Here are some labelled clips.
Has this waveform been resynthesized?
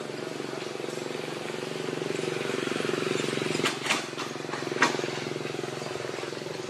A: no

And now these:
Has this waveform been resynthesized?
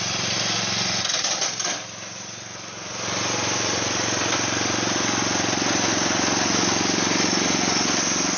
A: no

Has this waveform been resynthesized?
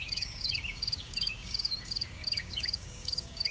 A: yes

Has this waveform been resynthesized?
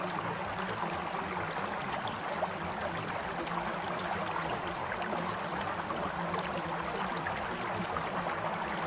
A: no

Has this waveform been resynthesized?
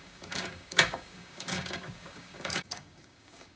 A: yes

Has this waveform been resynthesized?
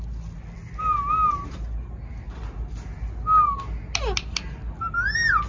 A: no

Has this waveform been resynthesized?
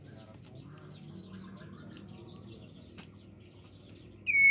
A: no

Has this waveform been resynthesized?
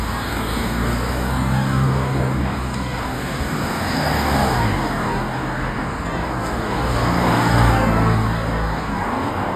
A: yes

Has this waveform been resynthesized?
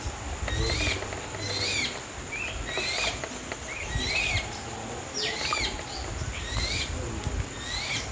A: no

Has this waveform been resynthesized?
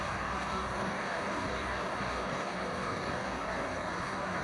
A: yes